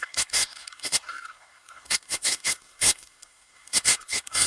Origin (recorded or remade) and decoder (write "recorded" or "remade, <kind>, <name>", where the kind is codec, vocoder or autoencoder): remade, codec, SNAC